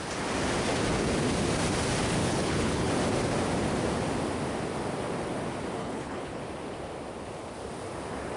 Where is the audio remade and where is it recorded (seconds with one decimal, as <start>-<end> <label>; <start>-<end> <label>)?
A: 0.0-2.2 recorded; 2.2-2.9 remade; 2.9-5.8 recorded; 5.8-6.4 remade; 6.4-8.4 recorded